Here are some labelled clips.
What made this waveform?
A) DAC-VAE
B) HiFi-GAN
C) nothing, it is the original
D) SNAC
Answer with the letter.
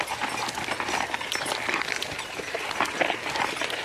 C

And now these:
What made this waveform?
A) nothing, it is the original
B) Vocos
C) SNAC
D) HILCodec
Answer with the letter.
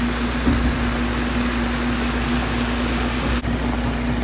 A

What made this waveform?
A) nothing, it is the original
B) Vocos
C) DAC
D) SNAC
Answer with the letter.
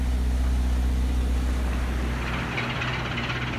A